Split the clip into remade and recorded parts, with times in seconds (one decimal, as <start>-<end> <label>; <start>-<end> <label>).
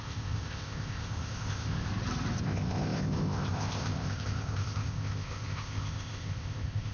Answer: 0.0-1.9 remade; 1.9-2.4 recorded; 2.4-6.9 remade